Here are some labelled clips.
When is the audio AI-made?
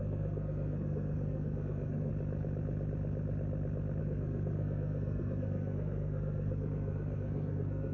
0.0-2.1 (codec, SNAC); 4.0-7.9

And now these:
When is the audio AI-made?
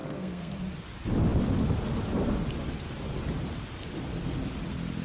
0.0-0.5 (codec, SNAC)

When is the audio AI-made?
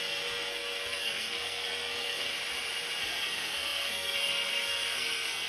0.0-2.3 (codec, SNAC); 3.0-5.5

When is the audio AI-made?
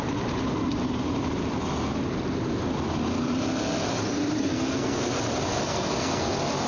4.4-5.0 (codec, SNAC); 5.5-6.3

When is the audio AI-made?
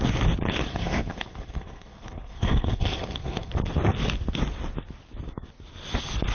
0.7-3.5 (codec, SNAC)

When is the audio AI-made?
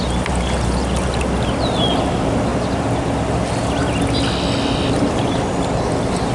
none